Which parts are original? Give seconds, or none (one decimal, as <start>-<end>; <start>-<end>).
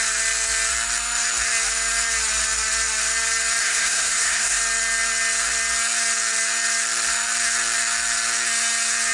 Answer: 0.0-3.6; 4.6-9.1